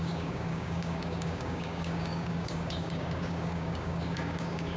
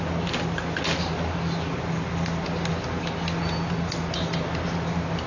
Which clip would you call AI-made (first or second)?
first